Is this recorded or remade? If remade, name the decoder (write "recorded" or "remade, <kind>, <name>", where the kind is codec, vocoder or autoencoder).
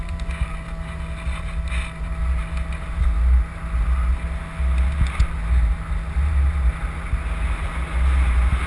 recorded